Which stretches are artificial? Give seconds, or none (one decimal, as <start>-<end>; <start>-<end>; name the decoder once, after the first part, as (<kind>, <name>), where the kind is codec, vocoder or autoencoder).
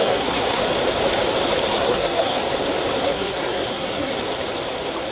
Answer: 0.0-0.6 (codec, SNAC); 1.7-2.4; 3.0-4.1